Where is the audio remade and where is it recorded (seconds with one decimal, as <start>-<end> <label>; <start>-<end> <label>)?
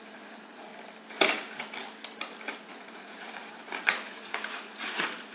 0.0-0.7 remade; 0.7-2.5 recorded; 2.5-5.3 remade